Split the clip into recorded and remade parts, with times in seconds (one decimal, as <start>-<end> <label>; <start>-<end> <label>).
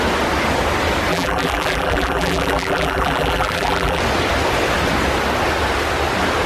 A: 0.0-1.1 recorded; 1.1-4.0 remade; 4.0-6.5 recorded